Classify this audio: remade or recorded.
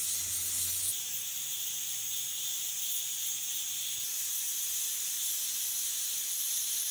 recorded